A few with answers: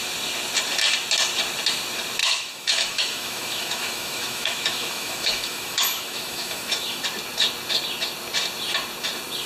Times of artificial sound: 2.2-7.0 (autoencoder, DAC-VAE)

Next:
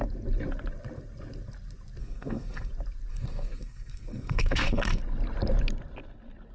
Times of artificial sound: 2.0-2.7 (codec, SNAC); 3.1-5.0

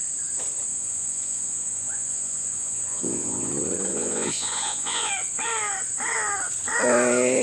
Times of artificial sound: 0.7-3.5 (vocoder, Vocos); 3.9-5.1

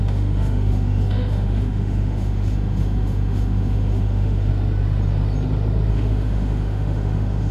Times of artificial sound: 0.0-4.5 (autoencoder, DAC-VAE); 5.9-7.5

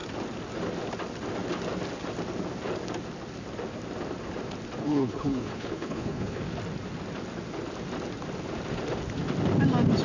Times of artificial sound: 4.8-6.4 (codec, HILCodec)

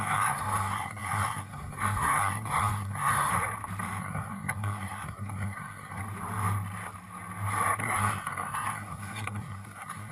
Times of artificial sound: 0.0-3.3 (codec, SNAC); 4.0-6.0; 7.8-10.1